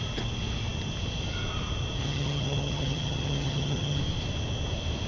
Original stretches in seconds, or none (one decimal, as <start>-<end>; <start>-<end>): 0.0-2.0; 4.0-5.1